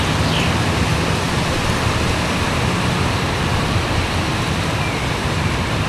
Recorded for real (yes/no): yes